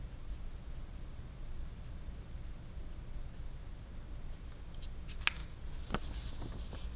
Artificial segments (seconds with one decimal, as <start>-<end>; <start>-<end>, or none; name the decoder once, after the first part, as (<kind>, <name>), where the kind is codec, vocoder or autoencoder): none